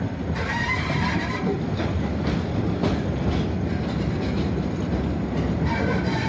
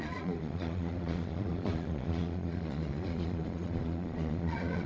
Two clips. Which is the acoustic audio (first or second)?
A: first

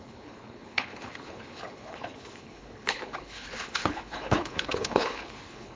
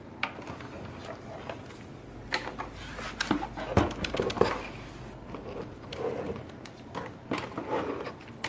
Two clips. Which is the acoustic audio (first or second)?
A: second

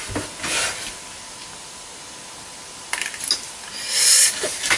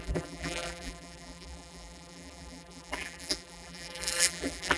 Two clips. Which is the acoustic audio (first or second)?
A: first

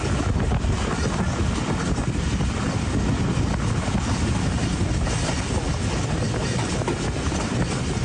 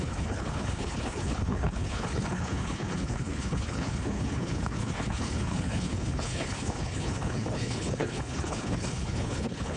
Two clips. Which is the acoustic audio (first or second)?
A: first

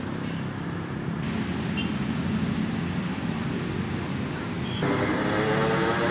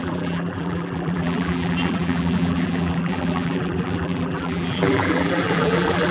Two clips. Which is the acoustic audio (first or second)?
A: first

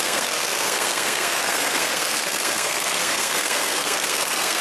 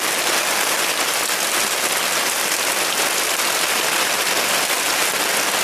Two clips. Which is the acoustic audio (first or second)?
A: second